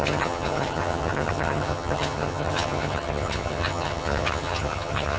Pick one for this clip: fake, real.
fake